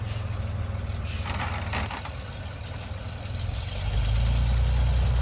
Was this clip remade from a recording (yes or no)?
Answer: no